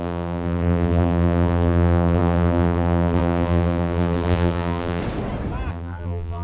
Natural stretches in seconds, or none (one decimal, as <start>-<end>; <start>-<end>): 5.0-5.7